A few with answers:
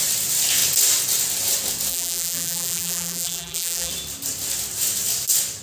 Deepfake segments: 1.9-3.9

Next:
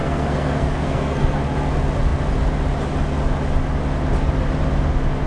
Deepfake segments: 0.0-1.4

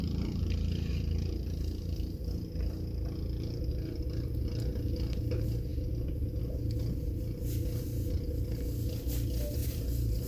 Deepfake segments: 0.0-2.3; 9.6-10.3

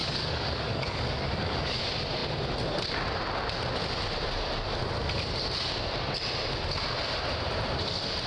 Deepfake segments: 0.0-1.8

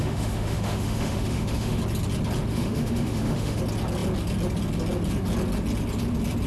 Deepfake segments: 0.0-1.8; 2.5-3.6

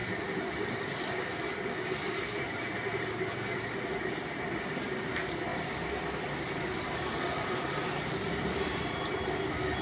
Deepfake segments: 5.5-9.1

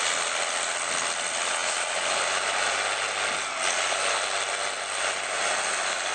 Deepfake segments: none

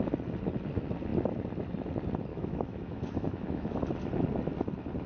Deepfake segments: 2.3-3.8